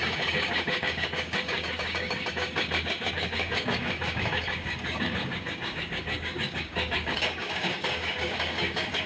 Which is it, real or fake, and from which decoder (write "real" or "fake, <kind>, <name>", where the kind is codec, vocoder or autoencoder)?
fake, codec, DAC